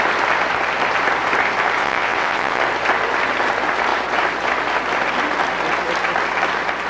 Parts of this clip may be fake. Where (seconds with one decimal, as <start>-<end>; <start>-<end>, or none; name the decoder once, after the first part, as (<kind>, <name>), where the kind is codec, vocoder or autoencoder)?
1.8-2.6 (vocoder, WaveNeXt)